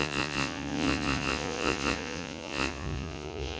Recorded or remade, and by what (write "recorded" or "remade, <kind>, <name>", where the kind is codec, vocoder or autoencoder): remade, vocoder, Vocos